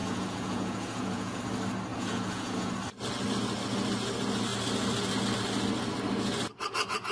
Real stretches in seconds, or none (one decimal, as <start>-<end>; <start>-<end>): 1.4-1.9; 2.7-7.1